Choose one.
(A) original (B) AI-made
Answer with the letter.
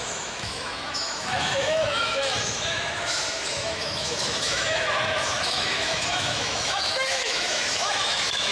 B